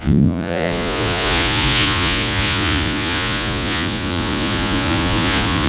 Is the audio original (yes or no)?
no